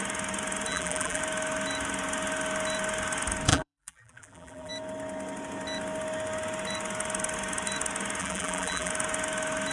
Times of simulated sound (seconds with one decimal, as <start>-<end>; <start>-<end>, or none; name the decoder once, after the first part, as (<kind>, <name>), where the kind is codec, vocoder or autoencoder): 0.7-1.2 (vocoder, BigVGAN v2); 3.5-4.7; 8.2-8.9